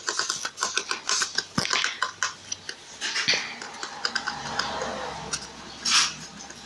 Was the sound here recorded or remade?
recorded